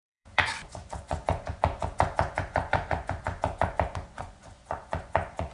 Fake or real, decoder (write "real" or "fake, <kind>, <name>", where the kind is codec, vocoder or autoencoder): fake, vocoder, Vocos